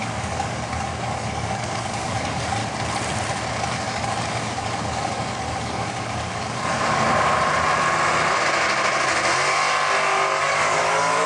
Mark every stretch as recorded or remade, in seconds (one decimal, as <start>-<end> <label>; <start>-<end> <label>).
0.0-2.6 remade; 2.6-3.5 recorded; 3.5-7.1 remade; 7.1-10.4 recorded; 10.4-11.3 remade